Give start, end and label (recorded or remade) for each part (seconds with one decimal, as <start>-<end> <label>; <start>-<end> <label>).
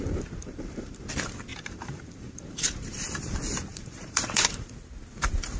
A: 0.0-0.4 recorded; 0.4-1.0 remade; 1.0-1.5 recorded; 1.5-3.3 remade; 3.3-3.7 recorded; 3.7-4.7 remade; 4.7-5.6 recorded